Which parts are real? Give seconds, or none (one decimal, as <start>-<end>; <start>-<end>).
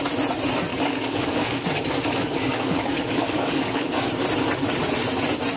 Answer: 0.0-0.7; 4.1-5.6